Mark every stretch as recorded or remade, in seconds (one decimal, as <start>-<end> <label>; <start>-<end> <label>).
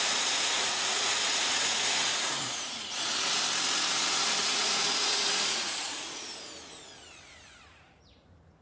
0.0-3.1 remade; 3.1-4.4 recorded; 4.4-6.3 remade; 6.3-7.1 recorded; 7.1-8.6 remade